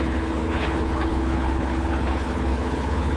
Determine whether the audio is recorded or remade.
remade